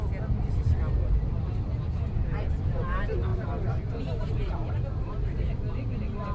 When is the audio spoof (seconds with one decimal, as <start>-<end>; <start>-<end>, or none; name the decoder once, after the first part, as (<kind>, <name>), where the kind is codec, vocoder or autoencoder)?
3.3-4.5 (vocoder, BigVGAN v2)